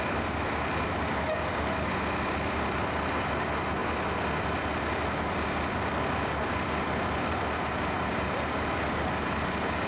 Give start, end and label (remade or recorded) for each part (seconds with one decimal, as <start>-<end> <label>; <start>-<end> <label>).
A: 0.0-9.9 recorded